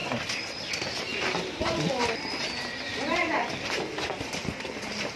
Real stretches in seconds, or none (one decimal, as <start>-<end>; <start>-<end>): 0.0-0.7; 1.1-1.9

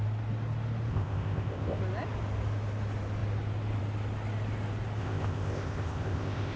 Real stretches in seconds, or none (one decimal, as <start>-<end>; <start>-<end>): 0.0-0.9; 1.8-5.0

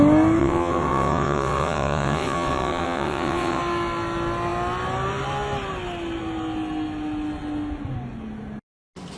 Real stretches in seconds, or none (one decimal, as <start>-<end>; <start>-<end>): 0.0-0.4; 3.6-9.2

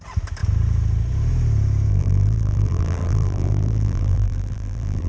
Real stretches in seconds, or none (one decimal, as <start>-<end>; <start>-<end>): 0.0-1.9

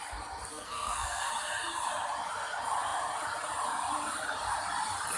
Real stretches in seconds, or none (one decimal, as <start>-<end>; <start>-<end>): 0.0-0.5; 1.3-5.2

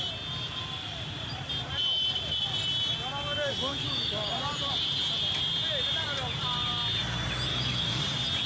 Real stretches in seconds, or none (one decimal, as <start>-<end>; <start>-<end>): 0.0-3.7; 4.3-7.5; 8.0-8.5

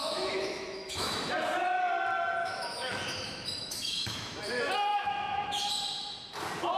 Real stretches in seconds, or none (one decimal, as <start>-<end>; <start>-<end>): 1.3-2.4; 4.4-4.9; 5.7-6.8

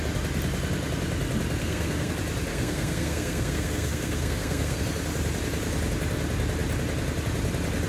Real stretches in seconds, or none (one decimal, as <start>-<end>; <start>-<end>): 0.0-1.6; 2.1-2.5; 4.8-7.9